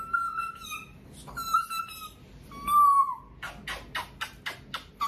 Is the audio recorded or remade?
recorded